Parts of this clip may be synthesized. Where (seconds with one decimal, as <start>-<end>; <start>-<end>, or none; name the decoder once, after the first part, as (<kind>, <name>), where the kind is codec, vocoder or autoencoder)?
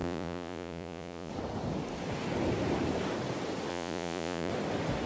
0.0-1.3 (vocoder, Vocos); 3.7-4.5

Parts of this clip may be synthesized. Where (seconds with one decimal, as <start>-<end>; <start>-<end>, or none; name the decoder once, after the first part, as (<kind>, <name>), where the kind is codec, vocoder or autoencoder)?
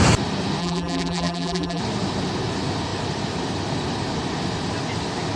0.6-1.8 (vocoder, BigVGAN v2)